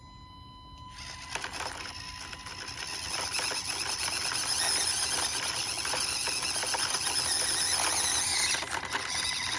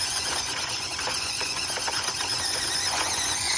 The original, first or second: first